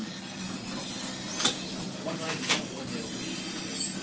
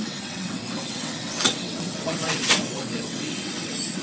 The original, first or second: first